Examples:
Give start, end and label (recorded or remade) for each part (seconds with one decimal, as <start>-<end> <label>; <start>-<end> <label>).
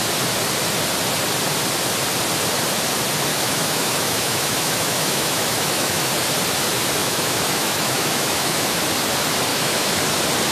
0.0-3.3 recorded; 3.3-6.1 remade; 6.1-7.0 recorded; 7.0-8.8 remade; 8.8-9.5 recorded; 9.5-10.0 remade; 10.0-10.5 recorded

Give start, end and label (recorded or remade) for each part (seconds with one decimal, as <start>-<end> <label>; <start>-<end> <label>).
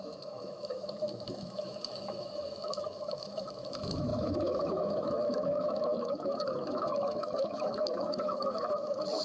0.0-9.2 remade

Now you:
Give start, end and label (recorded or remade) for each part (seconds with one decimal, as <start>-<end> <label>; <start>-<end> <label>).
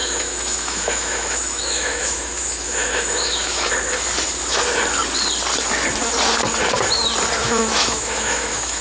0.0-3.7 remade; 3.7-7.4 recorded; 7.4-8.8 remade